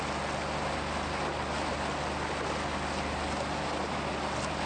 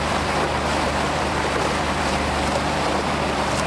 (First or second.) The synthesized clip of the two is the second